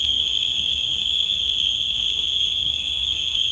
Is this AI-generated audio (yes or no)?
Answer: yes